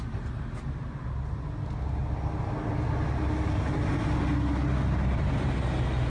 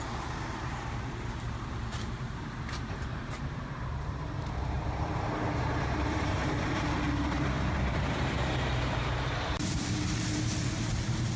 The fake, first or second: second